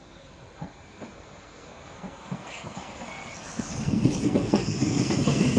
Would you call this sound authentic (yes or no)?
no